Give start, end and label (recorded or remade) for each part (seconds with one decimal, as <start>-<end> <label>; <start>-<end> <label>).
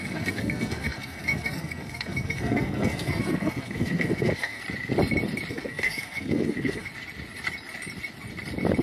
0.0-4.6 remade; 4.6-5.5 recorded; 5.5-6.9 remade; 6.9-8.8 recorded